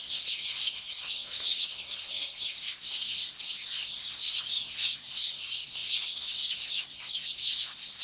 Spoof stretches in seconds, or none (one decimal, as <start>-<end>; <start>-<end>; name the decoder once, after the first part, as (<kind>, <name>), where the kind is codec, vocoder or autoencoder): 0.0-8.0 (codec, SNAC)

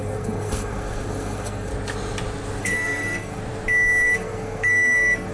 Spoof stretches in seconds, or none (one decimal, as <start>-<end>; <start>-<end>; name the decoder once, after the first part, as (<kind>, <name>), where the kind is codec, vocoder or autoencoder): 0.0-1.7 (codec, SNAC); 2.6-3.4; 4.0-5.3

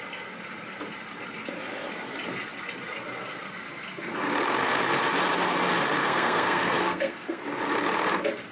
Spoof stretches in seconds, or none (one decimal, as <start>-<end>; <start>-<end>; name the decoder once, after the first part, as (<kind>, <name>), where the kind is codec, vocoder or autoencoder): 6.0-7.4 (codec, SNAC)

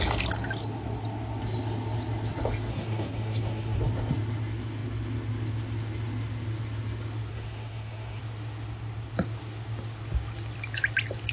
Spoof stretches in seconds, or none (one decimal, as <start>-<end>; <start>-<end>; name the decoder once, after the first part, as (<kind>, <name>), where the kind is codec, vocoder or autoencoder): 2.7-3.8 (codec, SNAC); 7.3-8.2

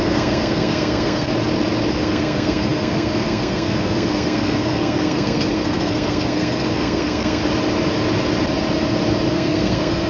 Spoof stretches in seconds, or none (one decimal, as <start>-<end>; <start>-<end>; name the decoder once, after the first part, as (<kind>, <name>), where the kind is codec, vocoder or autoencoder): 0.0-1.3 (codec, SNAC); 1.9-7.4; 9.3-10.1

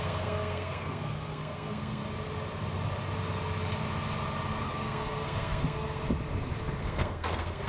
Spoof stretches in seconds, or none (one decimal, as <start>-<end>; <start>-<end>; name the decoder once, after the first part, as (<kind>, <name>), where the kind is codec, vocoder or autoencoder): 0.0-2.0 (codec, SNAC); 4.6-6.0; 6.8-7.7

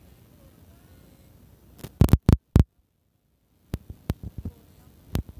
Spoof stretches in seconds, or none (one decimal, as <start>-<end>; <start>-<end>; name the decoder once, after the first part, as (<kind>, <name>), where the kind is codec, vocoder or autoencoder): none

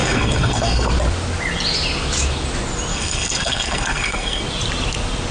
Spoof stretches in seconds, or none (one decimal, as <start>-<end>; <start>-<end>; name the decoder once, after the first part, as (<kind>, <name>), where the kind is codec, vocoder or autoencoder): 0.0-0.9 (codec, SNAC); 2.9-4.4